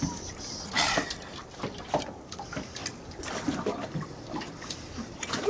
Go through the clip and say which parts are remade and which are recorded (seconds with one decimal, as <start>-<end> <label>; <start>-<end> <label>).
0.0-2.8 recorded; 2.8-5.5 remade

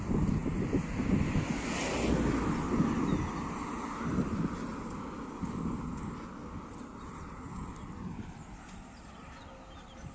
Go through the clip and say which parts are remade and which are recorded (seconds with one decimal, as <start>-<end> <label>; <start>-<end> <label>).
0.0-10.1 recorded

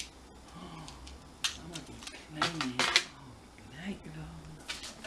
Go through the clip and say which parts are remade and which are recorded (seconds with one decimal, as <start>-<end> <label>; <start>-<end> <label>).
0.0-5.1 recorded

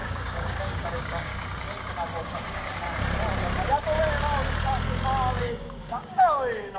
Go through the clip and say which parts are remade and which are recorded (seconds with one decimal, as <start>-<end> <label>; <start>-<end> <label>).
0.0-1.3 remade; 1.3-5.4 recorded; 5.4-6.8 remade

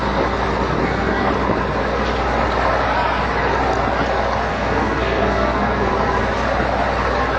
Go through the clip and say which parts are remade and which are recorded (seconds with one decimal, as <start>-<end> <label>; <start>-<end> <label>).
0.0-0.8 recorded; 0.8-1.3 remade; 1.3-4.5 recorded; 4.5-5.9 remade; 5.9-7.4 recorded

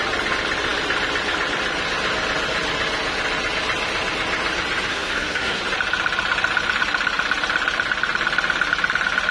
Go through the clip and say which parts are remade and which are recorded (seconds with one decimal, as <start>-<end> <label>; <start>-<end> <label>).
0.0-4.9 recorded; 4.9-5.6 remade; 5.6-9.3 recorded

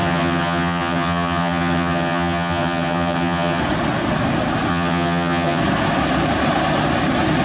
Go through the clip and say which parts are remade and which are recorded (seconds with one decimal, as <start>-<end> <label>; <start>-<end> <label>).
0.0-3.6 remade; 3.6-4.7 recorded; 4.7-5.6 remade; 5.6-7.4 recorded

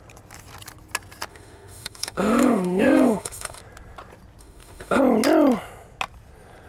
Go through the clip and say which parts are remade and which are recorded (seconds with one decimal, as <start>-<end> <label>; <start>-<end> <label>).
0.0-1.3 recorded; 1.3-3.6 remade; 3.6-4.4 recorded; 4.4-5.0 remade; 5.0-6.7 recorded